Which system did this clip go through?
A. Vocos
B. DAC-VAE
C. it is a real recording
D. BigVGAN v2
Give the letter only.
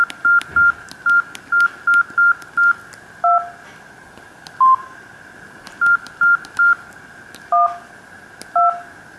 C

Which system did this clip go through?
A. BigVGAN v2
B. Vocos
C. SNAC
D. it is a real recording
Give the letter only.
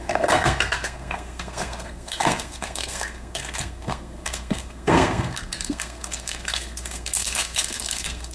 C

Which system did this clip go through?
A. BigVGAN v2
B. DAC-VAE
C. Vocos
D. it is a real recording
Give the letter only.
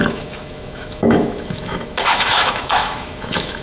B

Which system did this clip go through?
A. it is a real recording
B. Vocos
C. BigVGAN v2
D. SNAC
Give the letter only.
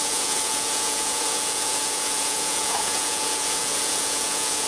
B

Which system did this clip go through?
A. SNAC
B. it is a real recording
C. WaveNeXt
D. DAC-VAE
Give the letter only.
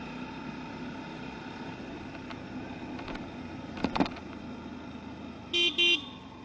B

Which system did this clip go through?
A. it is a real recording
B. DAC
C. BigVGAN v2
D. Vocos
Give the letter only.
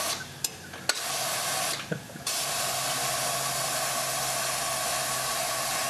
A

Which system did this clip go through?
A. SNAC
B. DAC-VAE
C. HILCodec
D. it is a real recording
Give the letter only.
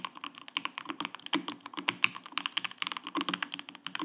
D